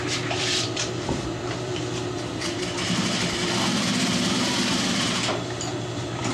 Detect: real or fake fake